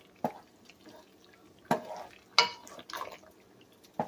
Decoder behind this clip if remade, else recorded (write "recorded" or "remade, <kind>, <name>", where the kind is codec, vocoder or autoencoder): recorded